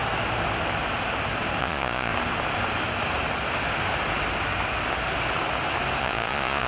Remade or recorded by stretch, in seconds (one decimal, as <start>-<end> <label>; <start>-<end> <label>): 0.0-1.6 recorded; 1.6-2.1 remade; 2.1-6.0 recorded; 6.0-6.7 remade